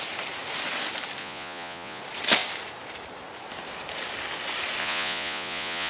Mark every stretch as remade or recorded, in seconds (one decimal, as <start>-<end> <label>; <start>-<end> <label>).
0.0-1.2 recorded; 1.2-2.0 remade; 2.0-4.8 recorded; 4.8-5.9 remade